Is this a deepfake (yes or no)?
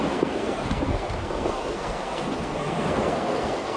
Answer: yes